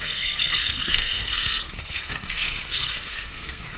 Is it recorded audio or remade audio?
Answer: remade